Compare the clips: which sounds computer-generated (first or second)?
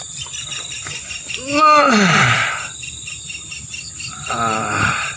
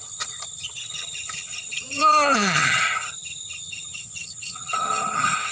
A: second